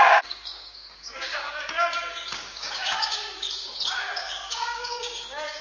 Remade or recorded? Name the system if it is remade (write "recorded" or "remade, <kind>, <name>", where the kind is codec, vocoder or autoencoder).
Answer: remade, codec, DAC